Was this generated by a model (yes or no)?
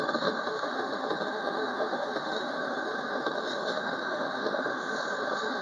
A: yes